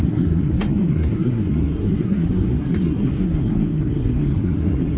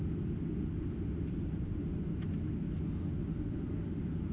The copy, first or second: first